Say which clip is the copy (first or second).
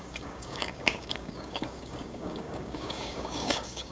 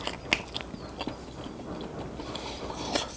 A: first